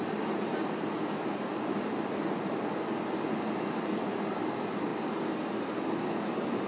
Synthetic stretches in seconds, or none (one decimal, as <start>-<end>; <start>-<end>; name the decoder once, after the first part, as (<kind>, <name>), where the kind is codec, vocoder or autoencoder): none